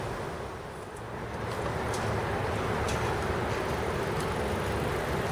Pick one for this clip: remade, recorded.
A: recorded